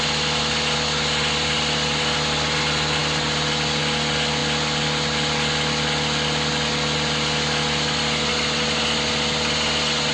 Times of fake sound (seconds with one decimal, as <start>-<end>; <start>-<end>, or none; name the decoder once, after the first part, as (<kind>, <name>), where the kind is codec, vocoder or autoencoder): none